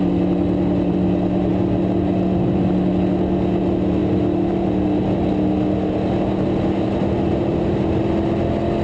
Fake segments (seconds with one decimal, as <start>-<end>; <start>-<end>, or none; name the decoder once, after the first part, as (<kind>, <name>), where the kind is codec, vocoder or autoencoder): none